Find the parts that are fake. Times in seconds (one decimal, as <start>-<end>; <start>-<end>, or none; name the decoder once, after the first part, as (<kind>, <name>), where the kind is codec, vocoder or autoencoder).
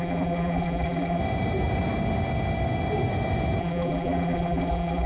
0.0-1.2 (vocoder, BigVGAN v2); 3.6-5.1